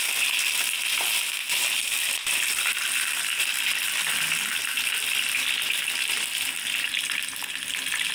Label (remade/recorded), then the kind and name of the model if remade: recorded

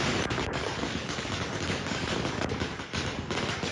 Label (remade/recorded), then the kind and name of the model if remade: remade, codec, DAC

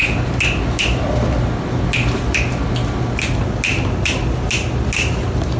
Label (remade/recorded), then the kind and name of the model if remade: recorded